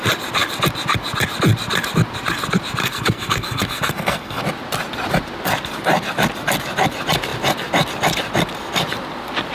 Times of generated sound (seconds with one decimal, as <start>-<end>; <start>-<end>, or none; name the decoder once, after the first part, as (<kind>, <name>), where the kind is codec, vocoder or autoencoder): 2.8-4.4 (codec, SNAC)